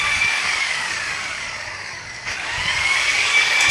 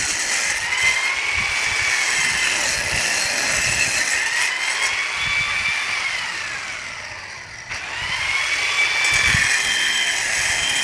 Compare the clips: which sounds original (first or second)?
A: second